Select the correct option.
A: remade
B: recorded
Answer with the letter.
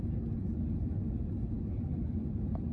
B